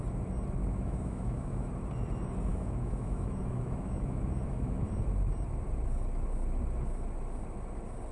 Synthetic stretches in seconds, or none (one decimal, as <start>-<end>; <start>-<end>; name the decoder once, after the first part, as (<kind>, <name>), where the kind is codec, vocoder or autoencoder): 0.6-1.7 (autoencoder, DAC-VAE); 2.5-4.9